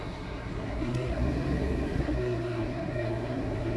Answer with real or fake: fake